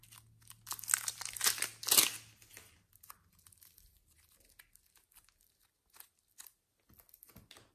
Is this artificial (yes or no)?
no